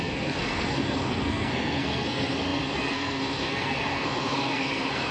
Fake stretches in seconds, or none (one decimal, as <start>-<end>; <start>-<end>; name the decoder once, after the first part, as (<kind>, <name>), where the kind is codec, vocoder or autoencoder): 0.0-5.1 (codec, SNAC)